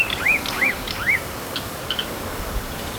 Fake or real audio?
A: fake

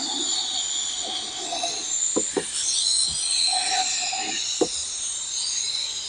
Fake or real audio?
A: real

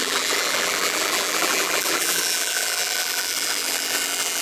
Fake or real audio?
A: fake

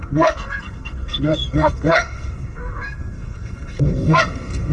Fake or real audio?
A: fake